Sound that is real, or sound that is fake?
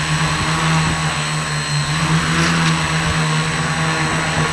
real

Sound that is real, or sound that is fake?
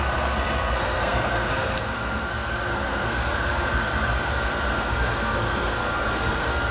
fake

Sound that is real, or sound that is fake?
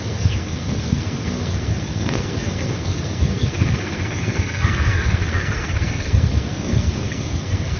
fake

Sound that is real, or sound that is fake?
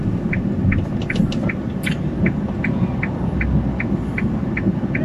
real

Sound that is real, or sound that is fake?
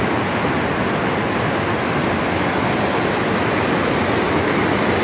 real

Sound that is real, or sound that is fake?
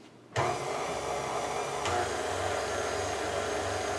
real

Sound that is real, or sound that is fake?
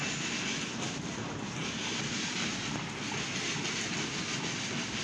real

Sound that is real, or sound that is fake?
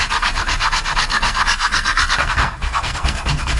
fake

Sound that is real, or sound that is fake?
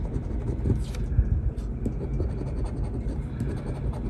real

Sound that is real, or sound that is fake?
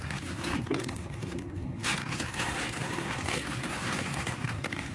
fake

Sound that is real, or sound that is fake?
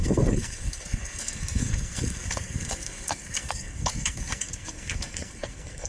fake